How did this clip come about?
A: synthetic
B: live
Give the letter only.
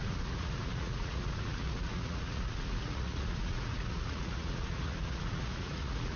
A